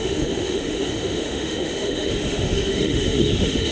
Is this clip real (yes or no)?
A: no